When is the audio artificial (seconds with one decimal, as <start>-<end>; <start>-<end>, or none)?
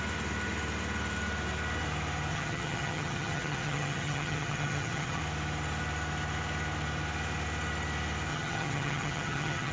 2.3-5.2; 8.3-9.7